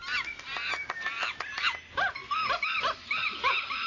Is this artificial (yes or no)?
no